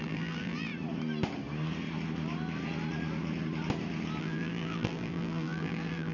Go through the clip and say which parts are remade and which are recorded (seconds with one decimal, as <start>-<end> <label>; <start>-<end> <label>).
0.0-0.7 remade; 0.7-4.2 recorded; 4.2-6.1 remade